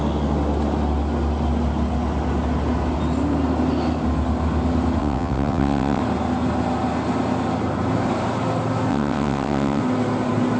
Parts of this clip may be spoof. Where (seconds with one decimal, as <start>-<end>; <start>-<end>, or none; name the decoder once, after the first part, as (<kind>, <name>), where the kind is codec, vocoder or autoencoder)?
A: 5.0-6.0 (vocoder, WaveNeXt); 8.9-9.8